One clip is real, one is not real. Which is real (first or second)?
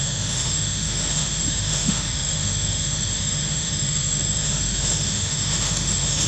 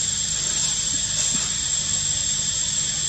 second